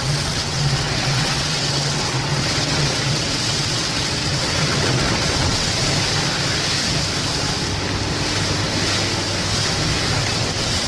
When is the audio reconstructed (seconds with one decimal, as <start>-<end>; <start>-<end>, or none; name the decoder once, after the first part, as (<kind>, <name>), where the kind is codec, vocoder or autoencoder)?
0.0-5.8 (vocoder, WaveNeXt); 10.3-10.9